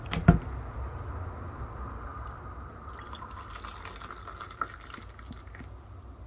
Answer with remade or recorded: recorded